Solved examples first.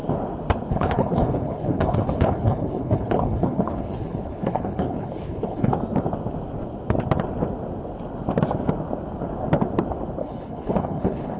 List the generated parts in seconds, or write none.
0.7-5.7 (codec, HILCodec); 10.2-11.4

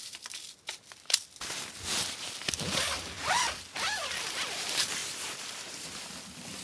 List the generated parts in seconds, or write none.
1.9-3.4 (vocoder, BigVGAN v2); 5.0-6.6

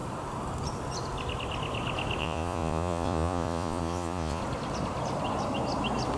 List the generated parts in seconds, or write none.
2.2-4.4 (vocoder, Vocos)

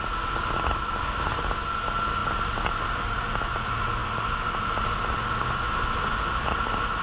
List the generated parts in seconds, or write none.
none